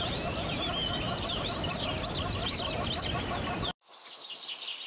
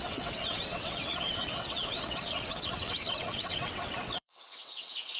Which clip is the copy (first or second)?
second